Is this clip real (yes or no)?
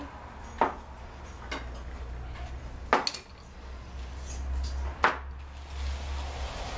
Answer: yes